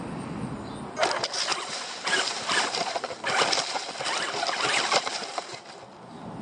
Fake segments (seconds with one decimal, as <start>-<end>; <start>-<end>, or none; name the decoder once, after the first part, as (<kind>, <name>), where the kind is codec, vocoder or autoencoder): none